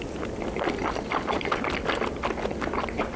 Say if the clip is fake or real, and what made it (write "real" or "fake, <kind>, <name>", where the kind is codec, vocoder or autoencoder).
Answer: real